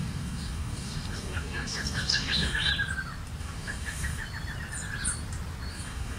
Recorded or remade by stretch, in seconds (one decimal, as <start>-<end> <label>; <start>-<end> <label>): 0.0-2.7 remade; 2.7-3.4 recorded; 3.4-4.2 remade; 4.2-5.7 recorded; 5.7-6.2 remade